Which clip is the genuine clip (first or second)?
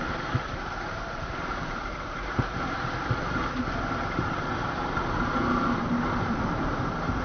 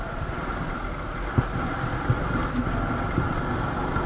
second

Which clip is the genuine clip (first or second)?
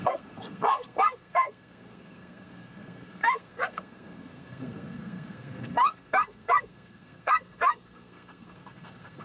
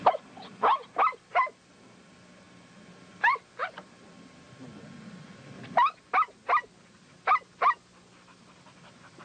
second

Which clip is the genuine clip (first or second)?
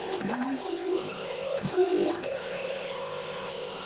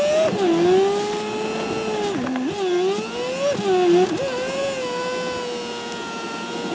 second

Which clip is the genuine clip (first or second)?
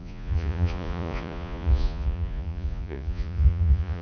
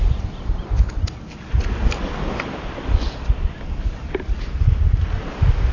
second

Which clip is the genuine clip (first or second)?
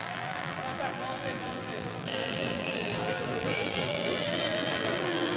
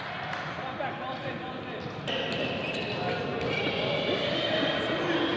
second